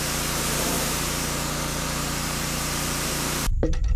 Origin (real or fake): fake